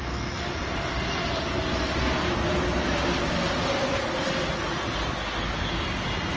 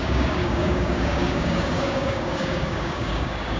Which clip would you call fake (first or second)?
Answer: second